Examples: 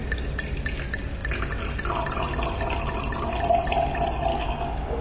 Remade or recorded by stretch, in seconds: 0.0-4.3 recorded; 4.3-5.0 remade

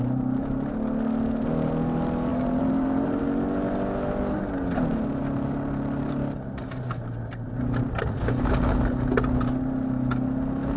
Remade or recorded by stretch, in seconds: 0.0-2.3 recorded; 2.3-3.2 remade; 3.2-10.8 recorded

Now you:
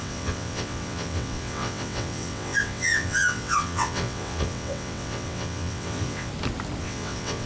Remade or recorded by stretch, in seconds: 0.0-6.3 remade; 6.3-6.8 recorded; 6.8-7.5 remade